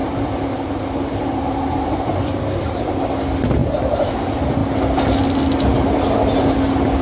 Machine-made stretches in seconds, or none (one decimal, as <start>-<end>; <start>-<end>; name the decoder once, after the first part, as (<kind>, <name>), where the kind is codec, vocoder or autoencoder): 0.0-3.0 (vocoder, BigVGAN v2); 3.6-4.1